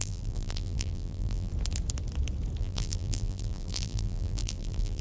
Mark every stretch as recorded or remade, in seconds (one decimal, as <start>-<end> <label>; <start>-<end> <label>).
0.0-1.5 remade; 1.5-2.6 recorded; 2.6-5.0 remade